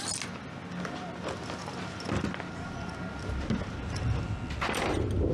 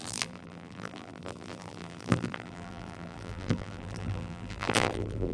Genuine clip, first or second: first